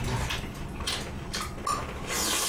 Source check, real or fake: real